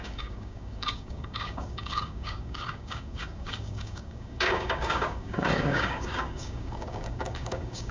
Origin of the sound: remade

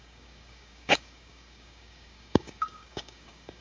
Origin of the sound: remade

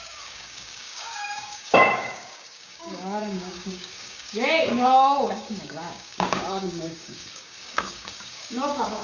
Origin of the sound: remade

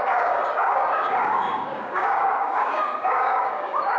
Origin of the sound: remade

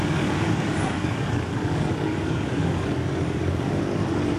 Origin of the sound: remade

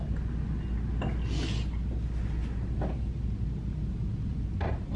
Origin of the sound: recorded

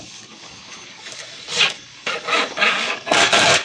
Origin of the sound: remade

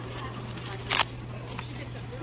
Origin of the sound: recorded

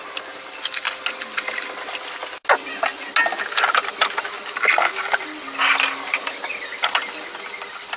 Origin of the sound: recorded